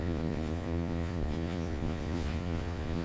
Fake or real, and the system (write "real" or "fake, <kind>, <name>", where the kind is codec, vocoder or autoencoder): fake, vocoder, Vocos